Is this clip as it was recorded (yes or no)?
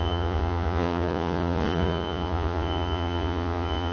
no